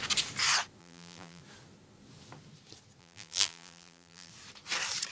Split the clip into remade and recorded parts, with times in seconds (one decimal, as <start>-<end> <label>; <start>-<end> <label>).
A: 0.0-0.8 recorded; 0.8-1.4 remade; 1.4-3.0 recorded; 3.0-4.3 remade; 4.3-5.1 recorded